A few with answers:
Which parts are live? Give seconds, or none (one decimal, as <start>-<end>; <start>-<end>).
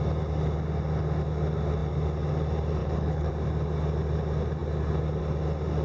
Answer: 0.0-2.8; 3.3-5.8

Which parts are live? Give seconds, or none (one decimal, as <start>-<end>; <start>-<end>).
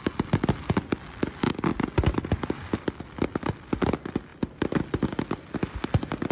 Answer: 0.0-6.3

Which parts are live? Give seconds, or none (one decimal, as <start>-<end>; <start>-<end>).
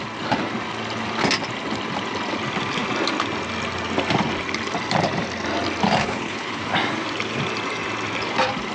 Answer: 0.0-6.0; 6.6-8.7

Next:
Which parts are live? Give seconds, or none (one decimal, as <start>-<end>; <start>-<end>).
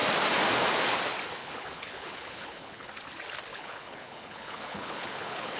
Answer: 0.0-1.4; 2.9-3.5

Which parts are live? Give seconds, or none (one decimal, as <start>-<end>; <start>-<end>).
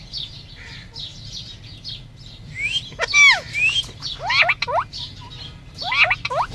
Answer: 0.0-6.5